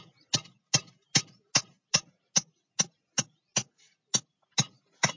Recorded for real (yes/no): yes